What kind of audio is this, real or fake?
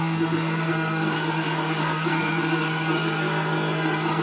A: fake